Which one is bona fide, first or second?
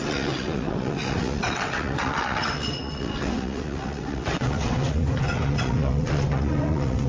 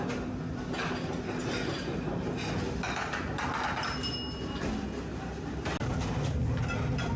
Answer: second